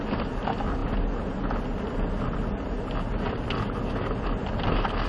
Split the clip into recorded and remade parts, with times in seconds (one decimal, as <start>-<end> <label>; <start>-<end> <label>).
0.0-5.1 recorded